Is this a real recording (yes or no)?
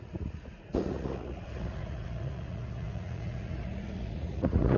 no